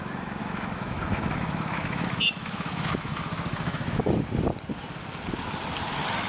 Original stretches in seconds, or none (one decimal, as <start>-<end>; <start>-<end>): 0.0-0.4; 4.2-6.3